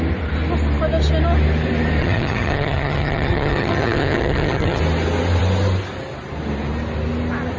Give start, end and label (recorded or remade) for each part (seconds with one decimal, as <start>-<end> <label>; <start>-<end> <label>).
0.0-2.0 recorded; 2.0-4.8 remade; 4.8-7.6 recorded